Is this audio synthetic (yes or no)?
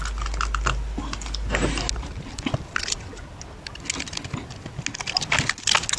no